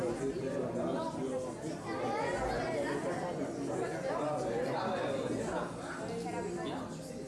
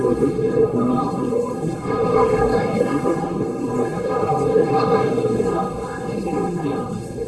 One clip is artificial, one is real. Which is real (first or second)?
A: first